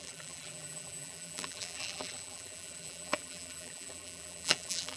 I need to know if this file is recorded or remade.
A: remade